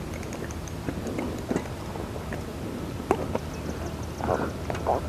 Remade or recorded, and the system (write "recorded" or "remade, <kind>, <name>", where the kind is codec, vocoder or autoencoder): recorded